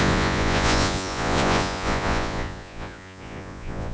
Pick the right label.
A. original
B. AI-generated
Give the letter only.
B